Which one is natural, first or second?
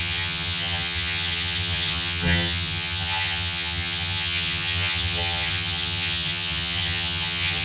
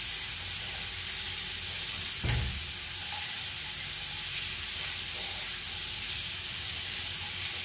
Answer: second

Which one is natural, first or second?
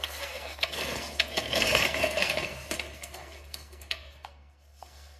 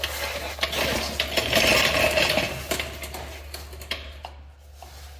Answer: second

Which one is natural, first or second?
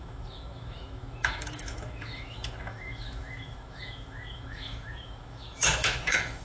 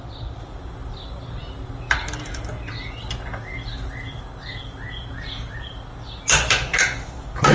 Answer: second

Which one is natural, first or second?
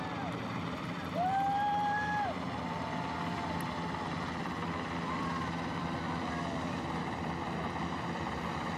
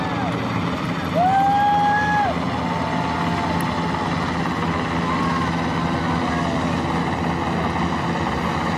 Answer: second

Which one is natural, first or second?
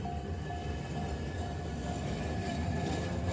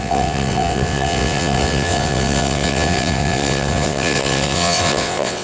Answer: first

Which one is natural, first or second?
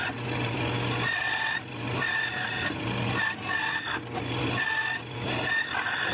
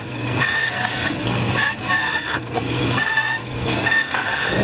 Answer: first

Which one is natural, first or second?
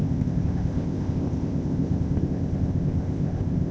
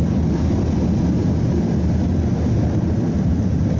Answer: second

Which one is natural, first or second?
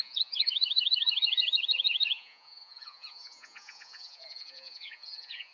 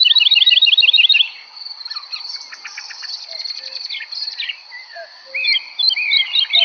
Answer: second